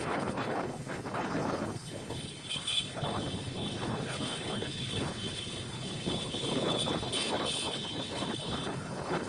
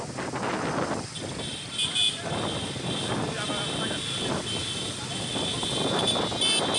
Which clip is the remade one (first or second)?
first